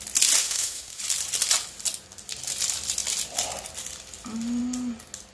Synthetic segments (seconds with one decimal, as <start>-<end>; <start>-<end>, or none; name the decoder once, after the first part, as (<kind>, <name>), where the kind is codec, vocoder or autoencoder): 0.4-1.0 (autoencoder, DAC-VAE)